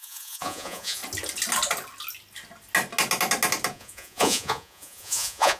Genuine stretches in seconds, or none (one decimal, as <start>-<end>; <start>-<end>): 1.0-3.7